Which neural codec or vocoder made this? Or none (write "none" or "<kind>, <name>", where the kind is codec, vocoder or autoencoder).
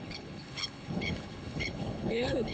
codec, HILCodec